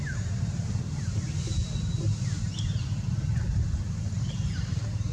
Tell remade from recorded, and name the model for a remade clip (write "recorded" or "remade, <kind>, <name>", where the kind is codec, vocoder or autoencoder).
recorded